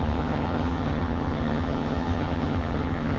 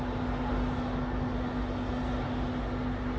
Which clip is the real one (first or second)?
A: second